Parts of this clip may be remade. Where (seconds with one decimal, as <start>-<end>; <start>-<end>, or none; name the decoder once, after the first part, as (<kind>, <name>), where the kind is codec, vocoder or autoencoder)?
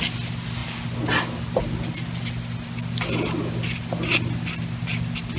none